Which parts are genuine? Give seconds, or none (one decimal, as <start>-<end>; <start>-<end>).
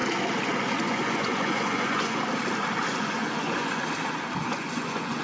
0.0-0.8; 2.2-2.9; 3.8-4.4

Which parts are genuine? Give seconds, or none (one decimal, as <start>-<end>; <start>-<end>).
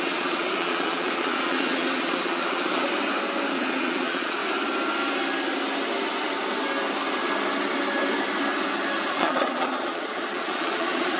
2.9-3.5; 4.4-9.1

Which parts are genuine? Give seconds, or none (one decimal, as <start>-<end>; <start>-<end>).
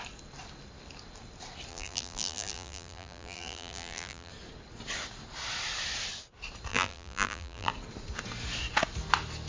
0.0-1.7; 4.3-6.7; 7.7-9.5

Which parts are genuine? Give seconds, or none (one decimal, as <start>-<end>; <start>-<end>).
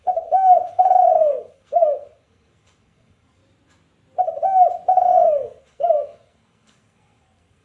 3.4-4.9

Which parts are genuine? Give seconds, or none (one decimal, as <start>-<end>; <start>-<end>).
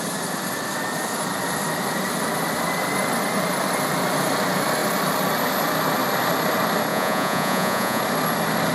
0.0-6.9; 8.0-8.7